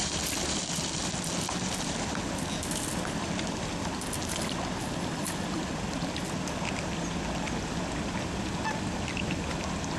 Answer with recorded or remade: recorded